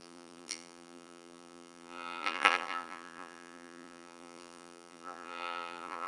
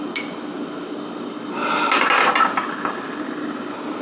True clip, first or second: second